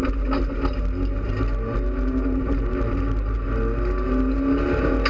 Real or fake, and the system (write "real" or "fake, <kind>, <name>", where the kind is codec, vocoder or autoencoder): real